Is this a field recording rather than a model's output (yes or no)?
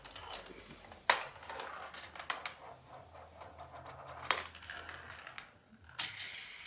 yes